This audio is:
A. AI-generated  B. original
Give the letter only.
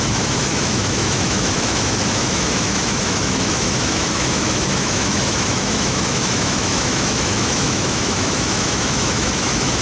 A